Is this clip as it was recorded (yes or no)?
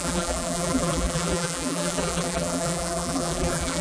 no